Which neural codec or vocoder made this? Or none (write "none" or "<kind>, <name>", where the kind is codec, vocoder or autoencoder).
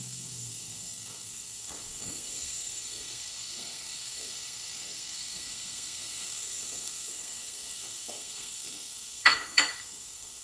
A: codec, SNAC